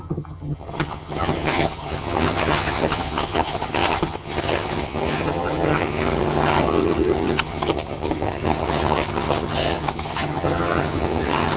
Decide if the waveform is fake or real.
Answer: fake